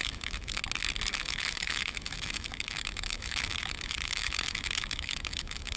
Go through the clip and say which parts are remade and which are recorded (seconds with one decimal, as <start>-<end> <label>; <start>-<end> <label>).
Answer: 0.0-0.6 remade; 0.6-1.1 recorded; 1.1-5.8 remade